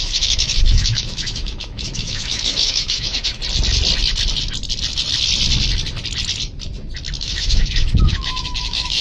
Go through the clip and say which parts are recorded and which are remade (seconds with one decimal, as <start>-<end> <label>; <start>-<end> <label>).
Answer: 0.0-3.4 remade; 3.4-7.2 recorded; 7.2-9.0 remade

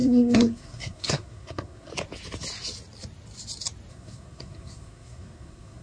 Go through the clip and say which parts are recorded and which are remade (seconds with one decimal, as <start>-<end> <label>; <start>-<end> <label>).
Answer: 0.0-1.9 remade; 1.9-3.9 recorded; 3.9-5.8 remade

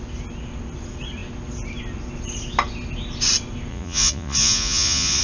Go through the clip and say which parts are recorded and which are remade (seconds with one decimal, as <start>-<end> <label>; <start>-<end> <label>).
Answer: 0.0-3.7 recorded; 3.7-5.2 remade

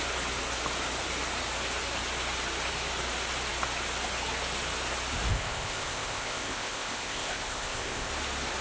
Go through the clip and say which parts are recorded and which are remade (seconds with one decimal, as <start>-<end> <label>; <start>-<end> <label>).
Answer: 0.0-5.3 recorded; 5.3-8.1 remade; 8.1-8.6 recorded

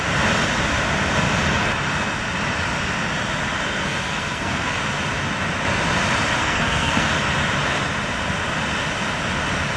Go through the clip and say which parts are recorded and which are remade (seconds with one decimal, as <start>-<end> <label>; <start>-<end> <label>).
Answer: 0.0-3.5 recorded; 3.5-4.8 remade; 4.8-6.4 recorded; 6.4-7.1 remade; 7.1-9.8 recorded

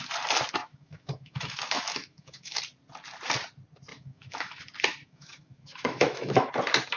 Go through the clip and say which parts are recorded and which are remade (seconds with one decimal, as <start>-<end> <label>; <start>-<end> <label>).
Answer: 0.0-0.6 recorded; 0.6-2.6 remade; 2.6-3.9 recorded; 3.9-4.6 remade; 4.6-5.0 recorded; 5.0-6.5 remade; 6.5-7.0 recorded

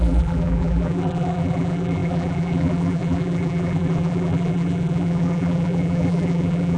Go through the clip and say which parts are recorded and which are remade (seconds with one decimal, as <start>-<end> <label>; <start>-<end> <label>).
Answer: 0.0-6.8 remade

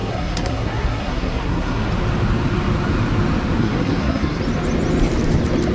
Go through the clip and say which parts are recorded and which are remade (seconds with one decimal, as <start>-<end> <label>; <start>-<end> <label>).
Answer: 0.0-1.9 remade; 1.9-3.6 recorded; 3.6-4.4 remade; 4.4-5.7 recorded